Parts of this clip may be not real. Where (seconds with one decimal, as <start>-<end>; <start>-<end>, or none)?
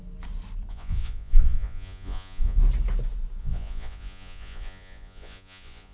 0.7-2.6; 3.4-5.9